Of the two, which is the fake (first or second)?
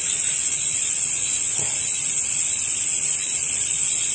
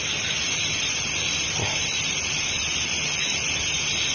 first